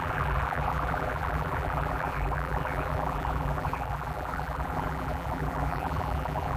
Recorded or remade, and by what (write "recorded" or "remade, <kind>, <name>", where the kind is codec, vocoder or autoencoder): remade, vocoder, BigVGAN v2